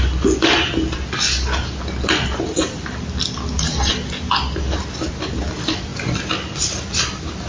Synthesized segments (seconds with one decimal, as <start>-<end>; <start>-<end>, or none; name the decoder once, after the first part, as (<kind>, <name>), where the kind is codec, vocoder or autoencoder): none